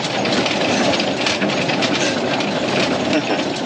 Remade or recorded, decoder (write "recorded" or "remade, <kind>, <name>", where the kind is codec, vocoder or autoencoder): recorded